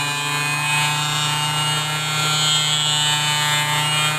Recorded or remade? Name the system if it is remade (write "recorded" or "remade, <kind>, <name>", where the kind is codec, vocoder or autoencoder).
recorded